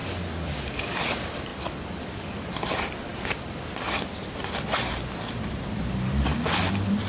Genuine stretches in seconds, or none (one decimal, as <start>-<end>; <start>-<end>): 3.1-4.4